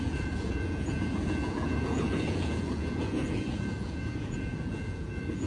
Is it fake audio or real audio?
fake